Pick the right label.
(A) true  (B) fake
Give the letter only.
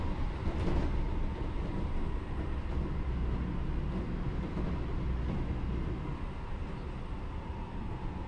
A